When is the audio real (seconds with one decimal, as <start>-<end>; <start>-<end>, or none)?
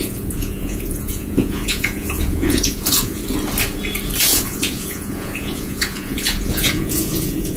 3.2-4.3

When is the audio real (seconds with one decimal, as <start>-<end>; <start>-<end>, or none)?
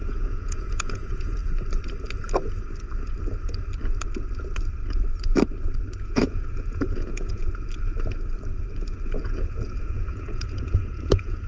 1.4-6.0; 7.4-9.2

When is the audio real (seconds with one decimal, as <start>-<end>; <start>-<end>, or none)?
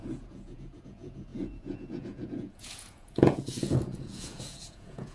none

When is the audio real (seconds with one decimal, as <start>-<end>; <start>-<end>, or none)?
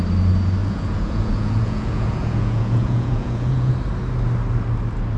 0.0-0.6; 3.7-5.2